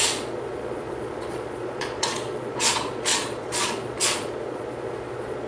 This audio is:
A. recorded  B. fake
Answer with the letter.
B